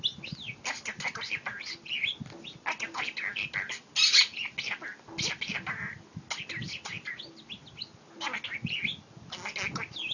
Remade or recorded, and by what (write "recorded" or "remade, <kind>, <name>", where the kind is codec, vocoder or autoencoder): recorded